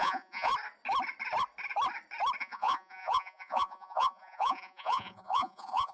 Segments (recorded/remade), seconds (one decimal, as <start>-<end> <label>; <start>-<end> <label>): 0.0-0.5 remade; 0.5-2.4 recorded; 2.4-5.9 remade